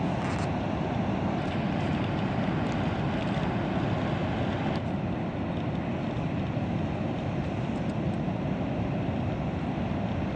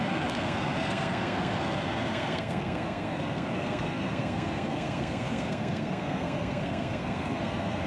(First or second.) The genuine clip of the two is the first